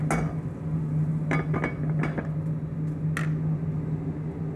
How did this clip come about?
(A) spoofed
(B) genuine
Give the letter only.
B